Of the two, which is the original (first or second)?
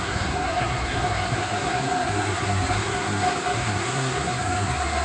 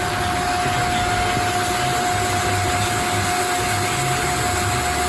second